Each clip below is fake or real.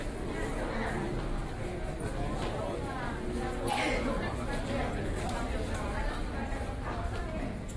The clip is real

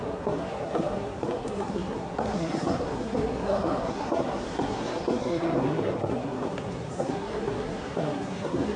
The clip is fake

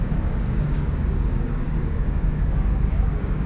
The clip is fake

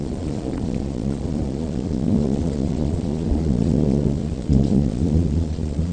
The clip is fake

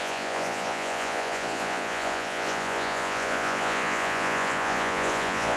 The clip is fake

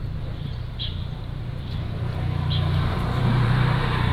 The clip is fake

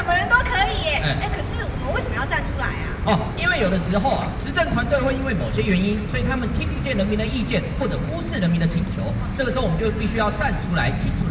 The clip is real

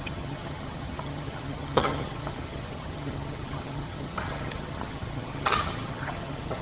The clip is fake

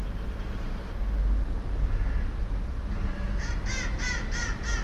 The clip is real